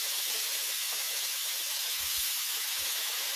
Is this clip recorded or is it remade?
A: remade